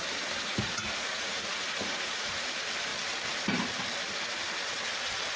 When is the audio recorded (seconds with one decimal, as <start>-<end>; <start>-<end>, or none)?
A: 0.0-0.5; 2.5-5.4